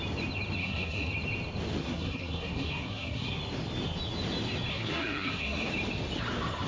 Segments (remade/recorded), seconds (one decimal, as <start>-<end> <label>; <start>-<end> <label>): 0.0-0.6 recorded; 0.6-1.1 remade; 1.1-1.8 recorded; 1.8-3.4 remade; 3.4-4.7 recorded; 4.7-5.7 remade; 5.7-6.7 recorded